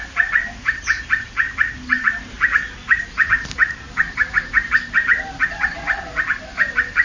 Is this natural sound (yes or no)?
yes